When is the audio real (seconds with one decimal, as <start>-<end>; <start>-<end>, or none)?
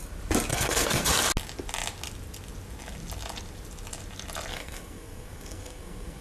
0.0-0.5; 1.1-4.5